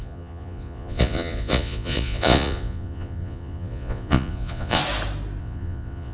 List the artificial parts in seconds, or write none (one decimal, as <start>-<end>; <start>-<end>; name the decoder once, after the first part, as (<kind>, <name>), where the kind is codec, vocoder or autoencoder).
0.0-4.8 (vocoder, Vocos); 5.4-6.1